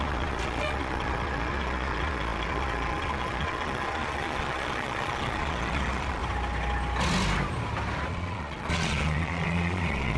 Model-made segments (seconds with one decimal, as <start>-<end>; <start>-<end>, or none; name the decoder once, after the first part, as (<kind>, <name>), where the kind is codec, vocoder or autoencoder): 0.0-6.2 (vocoder, Vocos); 8.1-10.2